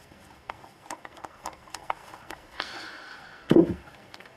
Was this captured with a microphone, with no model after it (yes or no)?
no